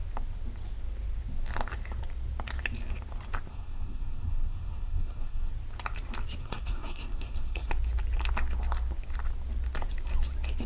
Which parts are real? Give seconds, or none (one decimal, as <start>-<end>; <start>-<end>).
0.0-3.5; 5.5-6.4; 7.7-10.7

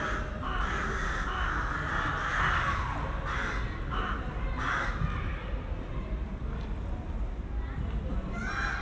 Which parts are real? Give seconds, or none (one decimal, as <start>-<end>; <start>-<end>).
0.0-8.8

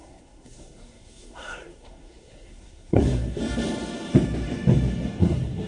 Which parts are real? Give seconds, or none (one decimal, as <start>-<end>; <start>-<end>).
3.4-5.2

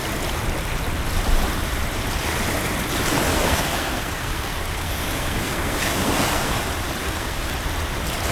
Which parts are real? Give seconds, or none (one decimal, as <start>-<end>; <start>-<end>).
0.0-3.3; 6.6-7.0; 7.5-8.3

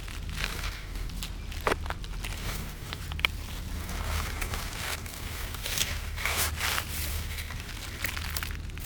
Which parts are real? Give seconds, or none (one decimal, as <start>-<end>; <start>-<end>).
0.0-0.4; 1.1-2.3; 3.0-3.8; 6.5-7.1; 7.7-8.9

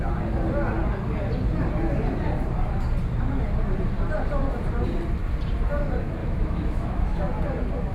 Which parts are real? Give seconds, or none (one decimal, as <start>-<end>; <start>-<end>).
0.0-6.2; 7.3-7.9

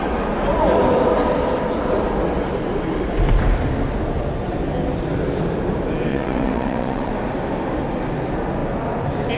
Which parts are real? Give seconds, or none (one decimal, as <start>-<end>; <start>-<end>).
0.0-6.1; 7.1-9.4